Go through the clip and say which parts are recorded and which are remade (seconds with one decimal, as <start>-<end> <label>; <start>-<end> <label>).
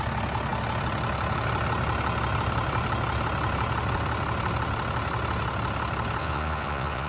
0.0-6.2 recorded; 6.2-7.1 remade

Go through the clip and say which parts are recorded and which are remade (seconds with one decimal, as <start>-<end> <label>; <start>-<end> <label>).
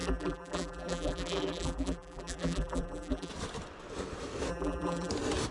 0.0-3.3 remade; 3.3-4.5 recorded; 4.5-5.1 remade; 5.1-5.5 recorded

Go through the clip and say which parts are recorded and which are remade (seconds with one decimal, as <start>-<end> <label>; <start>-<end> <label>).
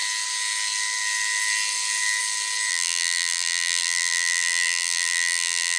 0.0-2.7 recorded; 2.7-5.8 remade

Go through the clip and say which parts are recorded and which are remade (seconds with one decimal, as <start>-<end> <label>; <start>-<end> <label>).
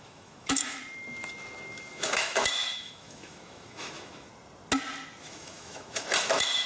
0.0-0.8 remade; 0.8-1.9 recorded; 1.9-4.3 remade; 4.3-5.2 recorded; 5.2-6.7 remade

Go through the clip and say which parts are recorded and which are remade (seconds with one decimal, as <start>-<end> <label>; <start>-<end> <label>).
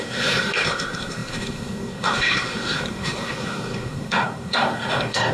0.0-5.3 remade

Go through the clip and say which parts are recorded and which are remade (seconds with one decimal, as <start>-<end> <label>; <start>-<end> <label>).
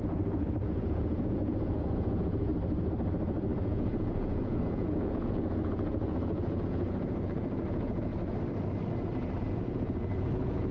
0.0-2.5 remade; 2.5-3.6 recorded; 3.6-8.1 remade; 8.1-9.4 recorded; 9.4-10.7 remade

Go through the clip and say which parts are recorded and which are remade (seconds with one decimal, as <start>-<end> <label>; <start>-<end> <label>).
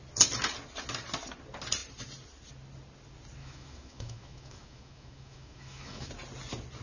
0.0-3.4 recorded; 3.4-6.1 remade; 6.1-6.8 recorded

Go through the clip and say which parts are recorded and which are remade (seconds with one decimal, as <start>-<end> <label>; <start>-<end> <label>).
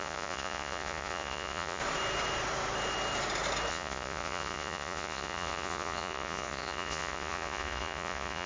0.0-1.8 remade; 1.8-3.7 recorded; 3.7-8.5 remade